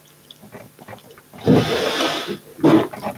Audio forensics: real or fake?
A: real